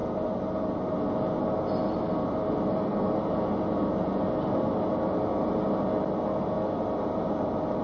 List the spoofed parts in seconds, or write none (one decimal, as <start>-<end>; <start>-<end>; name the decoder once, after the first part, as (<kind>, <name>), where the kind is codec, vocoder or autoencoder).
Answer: none